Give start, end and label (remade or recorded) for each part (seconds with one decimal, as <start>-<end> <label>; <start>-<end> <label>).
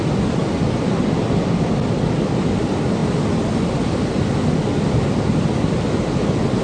0.0-6.6 recorded